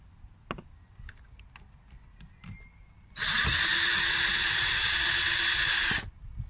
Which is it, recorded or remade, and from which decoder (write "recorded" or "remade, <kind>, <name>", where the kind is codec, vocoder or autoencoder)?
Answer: recorded